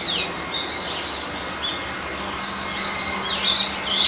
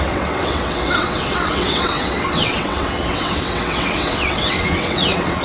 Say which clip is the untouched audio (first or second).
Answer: first